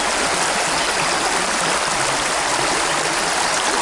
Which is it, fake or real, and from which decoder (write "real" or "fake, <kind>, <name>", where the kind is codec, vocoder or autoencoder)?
real